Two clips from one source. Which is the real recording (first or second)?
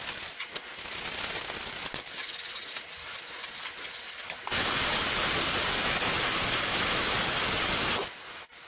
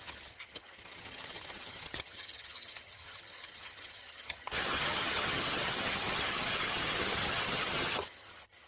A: first